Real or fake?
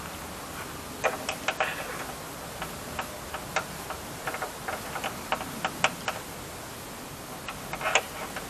real